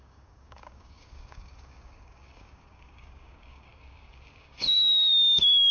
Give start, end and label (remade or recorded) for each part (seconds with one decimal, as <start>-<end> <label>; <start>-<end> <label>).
0.0-5.7 remade

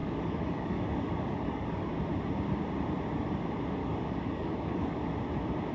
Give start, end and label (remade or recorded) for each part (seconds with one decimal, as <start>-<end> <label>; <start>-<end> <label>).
0.0-1.9 remade; 1.9-3.8 recorded; 3.8-5.0 remade; 5.0-5.7 recorded

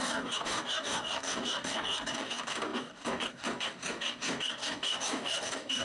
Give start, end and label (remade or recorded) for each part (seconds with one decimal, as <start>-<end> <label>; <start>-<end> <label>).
0.0-5.8 remade

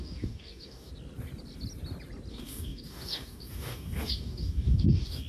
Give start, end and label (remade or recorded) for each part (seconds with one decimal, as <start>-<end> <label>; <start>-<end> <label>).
0.0-0.9 remade; 0.9-2.3 recorded; 2.3-5.3 remade

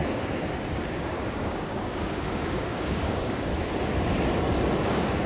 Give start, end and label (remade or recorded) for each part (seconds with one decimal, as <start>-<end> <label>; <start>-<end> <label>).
0.0-3.5 remade; 3.5-4.8 recorded; 4.8-5.3 remade

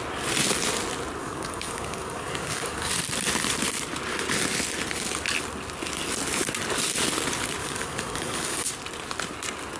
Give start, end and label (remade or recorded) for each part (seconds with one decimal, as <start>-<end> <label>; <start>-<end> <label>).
0.0-1.2 recorded; 1.2-2.9 remade; 2.9-7.6 recorded; 7.6-8.7 remade; 8.7-9.8 recorded